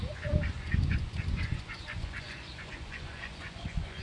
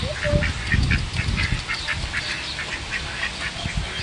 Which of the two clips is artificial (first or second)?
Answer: first